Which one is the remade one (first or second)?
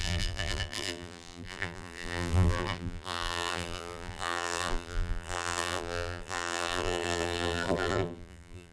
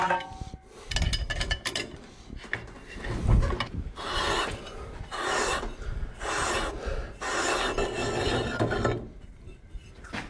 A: first